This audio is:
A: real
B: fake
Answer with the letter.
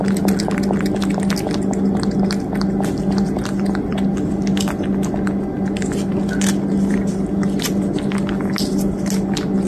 A